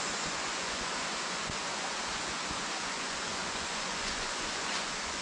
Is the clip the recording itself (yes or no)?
no